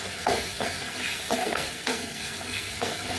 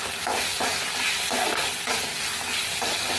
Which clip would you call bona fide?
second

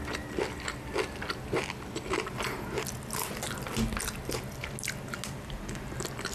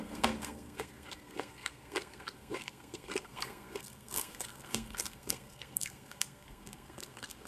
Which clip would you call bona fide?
first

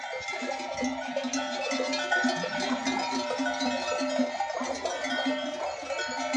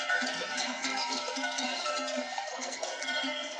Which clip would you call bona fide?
first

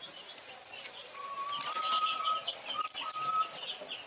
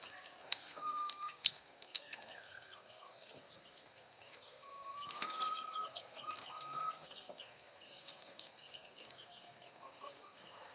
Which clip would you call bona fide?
first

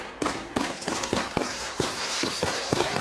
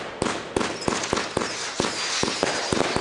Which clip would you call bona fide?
second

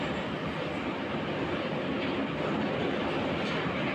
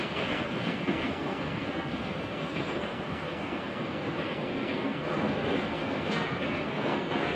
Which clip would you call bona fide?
first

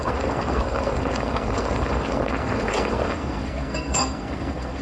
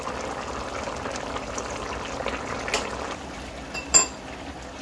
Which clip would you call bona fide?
second